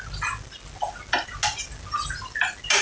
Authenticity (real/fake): real